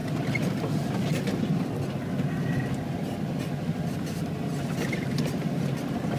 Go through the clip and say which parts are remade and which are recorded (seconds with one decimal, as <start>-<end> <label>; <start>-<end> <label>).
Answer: 0.0-6.2 recorded